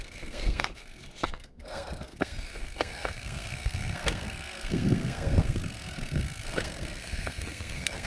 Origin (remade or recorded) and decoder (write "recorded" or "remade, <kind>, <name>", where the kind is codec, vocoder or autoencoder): remade, codec, SNAC